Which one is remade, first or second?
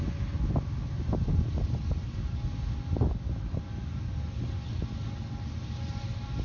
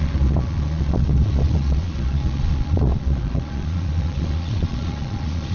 second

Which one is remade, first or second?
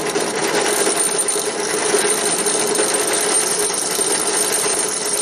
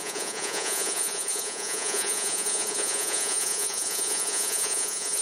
second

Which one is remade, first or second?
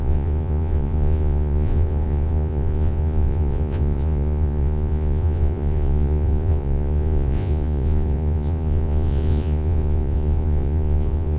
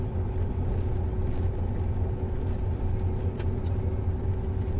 first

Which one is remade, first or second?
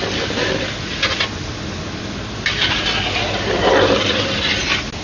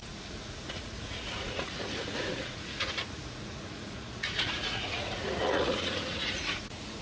second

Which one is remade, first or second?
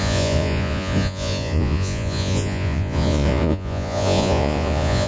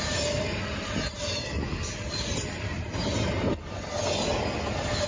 first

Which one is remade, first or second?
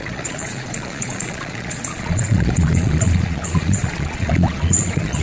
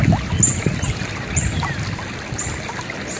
first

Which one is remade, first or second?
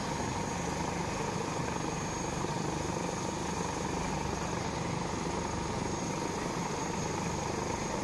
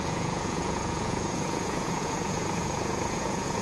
second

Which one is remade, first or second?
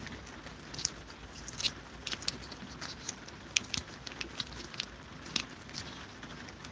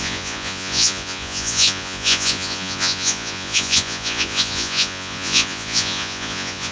second